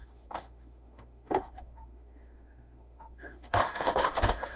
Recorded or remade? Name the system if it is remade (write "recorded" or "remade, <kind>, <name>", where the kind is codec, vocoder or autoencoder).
remade, autoencoder, DAC-VAE